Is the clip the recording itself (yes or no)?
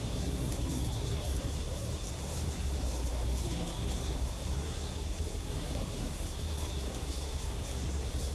no